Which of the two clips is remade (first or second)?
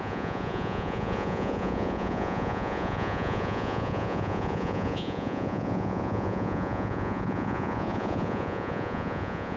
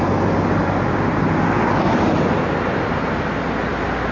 first